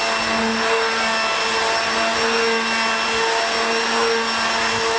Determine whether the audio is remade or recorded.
recorded